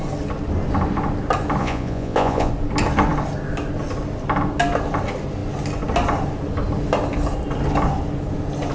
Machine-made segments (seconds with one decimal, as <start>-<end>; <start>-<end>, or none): 1.6-2.5